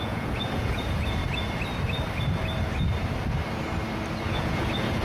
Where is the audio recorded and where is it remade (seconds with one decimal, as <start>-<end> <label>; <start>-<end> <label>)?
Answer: 0.0-1.2 remade; 1.2-4.2 recorded; 4.2-5.0 remade